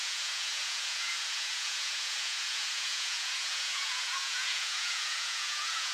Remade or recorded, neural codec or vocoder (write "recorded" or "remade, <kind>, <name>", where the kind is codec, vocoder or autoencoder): remade, vocoder, Vocos